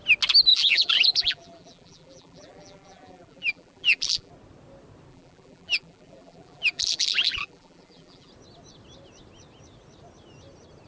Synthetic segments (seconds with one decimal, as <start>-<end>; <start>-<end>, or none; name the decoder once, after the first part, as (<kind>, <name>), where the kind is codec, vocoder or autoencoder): 0.5-4.3 (vocoder, BigVGAN v2); 5.1-8.3